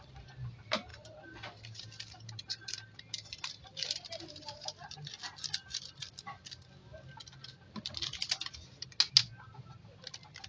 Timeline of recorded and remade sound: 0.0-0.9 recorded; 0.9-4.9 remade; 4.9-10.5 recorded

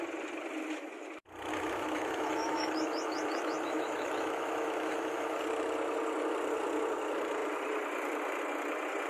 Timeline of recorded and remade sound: 0.0-1.5 recorded; 1.5-5.4 remade; 5.4-9.1 recorded

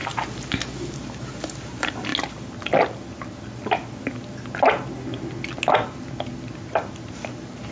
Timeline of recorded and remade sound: 0.0-0.9 recorded; 0.9-2.1 remade; 2.1-6.7 recorded; 6.7-7.7 remade

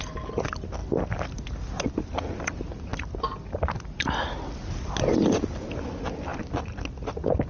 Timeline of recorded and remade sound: 0.0-7.5 recorded

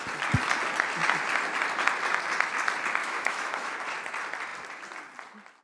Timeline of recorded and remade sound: 0.0-3.0 recorded; 3.0-3.8 remade; 3.8-5.6 recorded

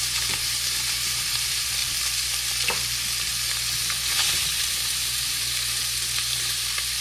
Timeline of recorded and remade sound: 0.0-1.8 remade; 1.8-4.3 recorded; 4.3-7.0 remade

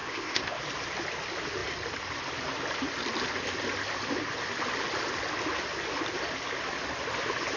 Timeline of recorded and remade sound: 0.0-0.6 remade; 0.6-7.6 recorded